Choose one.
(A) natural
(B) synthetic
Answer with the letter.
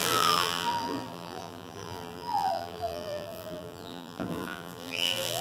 B